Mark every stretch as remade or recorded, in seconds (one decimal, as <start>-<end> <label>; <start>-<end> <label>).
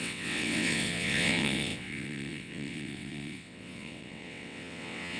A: 0.0-5.2 remade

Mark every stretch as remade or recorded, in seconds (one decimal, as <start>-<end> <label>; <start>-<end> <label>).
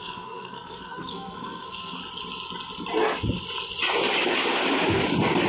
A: 0.0-2.0 remade; 2.0-5.5 recorded